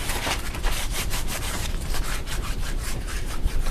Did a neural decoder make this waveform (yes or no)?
yes